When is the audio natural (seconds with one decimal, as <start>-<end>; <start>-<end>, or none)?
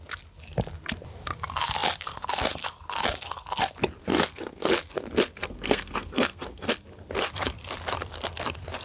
0.0-4.0; 4.7-5.4; 6.7-8.8